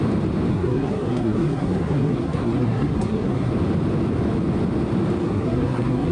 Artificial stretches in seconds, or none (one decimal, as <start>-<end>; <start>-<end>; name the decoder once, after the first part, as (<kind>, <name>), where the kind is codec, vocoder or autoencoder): 0.5-3.5 (codec, SNAC); 5.2-6.1